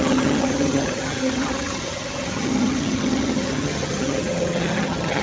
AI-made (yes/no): yes